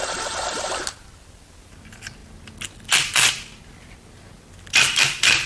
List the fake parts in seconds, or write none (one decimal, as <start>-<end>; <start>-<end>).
none